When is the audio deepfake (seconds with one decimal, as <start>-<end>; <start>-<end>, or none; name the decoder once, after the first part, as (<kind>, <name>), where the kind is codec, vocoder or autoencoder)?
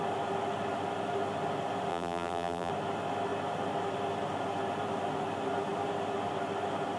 1.9-2.7 (vocoder, BigVGAN v2)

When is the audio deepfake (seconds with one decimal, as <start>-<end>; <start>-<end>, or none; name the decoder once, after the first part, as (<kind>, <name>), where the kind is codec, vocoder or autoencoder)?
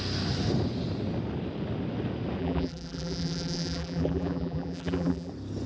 2.4-5.3 (vocoder, BigVGAN v2)